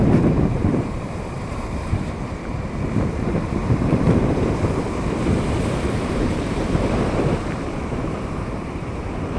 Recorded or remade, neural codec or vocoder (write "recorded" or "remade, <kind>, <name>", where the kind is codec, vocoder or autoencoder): remade, vocoder, BigVGAN v2